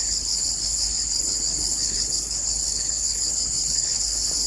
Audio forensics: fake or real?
fake